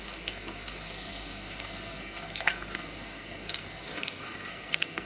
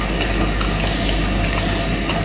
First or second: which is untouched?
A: second